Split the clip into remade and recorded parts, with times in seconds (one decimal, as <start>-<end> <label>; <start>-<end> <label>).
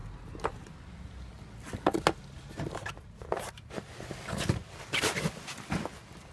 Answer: 0.0-6.3 recorded